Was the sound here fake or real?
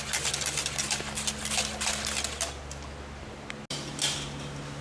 real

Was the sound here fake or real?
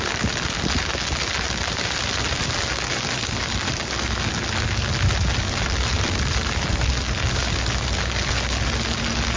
real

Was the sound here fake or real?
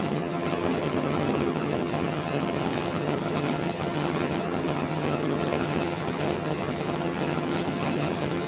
fake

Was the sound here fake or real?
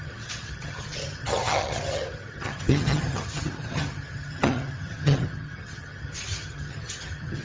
fake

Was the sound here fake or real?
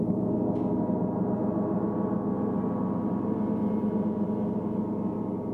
real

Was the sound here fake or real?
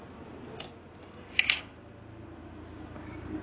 real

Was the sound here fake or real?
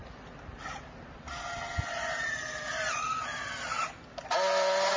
real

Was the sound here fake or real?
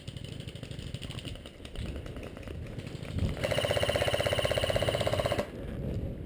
real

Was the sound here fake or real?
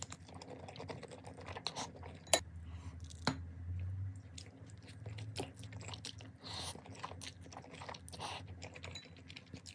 real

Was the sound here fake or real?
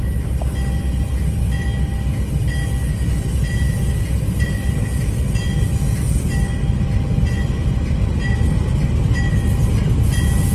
real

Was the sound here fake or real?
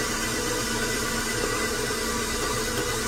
real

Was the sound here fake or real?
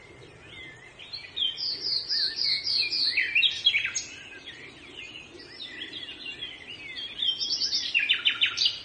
real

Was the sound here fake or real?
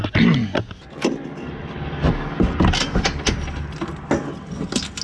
real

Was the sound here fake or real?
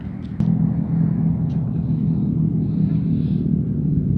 real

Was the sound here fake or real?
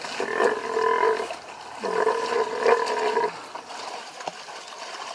real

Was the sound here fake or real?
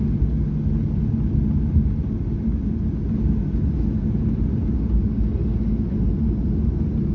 real